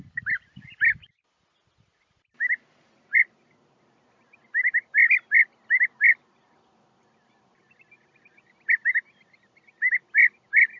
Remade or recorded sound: recorded